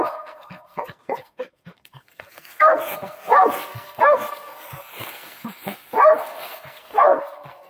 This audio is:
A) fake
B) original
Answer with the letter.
A